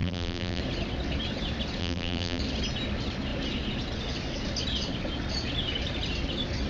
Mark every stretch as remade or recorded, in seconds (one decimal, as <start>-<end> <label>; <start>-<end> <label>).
0.0-0.6 remade; 0.6-1.8 recorded; 1.8-2.4 remade; 2.4-6.7 recorded

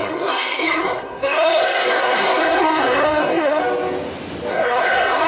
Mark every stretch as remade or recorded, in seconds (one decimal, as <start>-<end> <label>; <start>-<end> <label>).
0.0-3.6 remade; 3.6-4.5 recorded; 4.5-5.3 remade